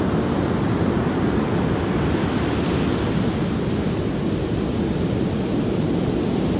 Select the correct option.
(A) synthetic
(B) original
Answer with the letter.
B